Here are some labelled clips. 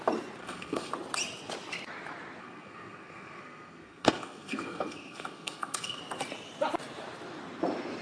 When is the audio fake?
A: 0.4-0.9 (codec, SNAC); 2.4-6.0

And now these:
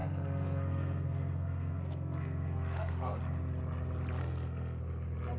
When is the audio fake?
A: 0.0-3.2 (codec, SNAC); 4.2-4.8